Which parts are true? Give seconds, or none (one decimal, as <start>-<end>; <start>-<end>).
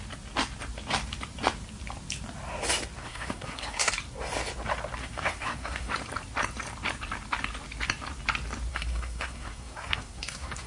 0.0-3.0; 3.9-5.0; 5.9-8.7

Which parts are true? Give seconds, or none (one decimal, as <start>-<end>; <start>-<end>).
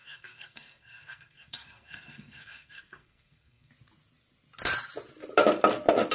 3.7-6.1